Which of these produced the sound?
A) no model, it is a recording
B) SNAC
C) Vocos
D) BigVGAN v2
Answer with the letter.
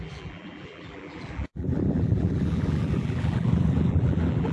D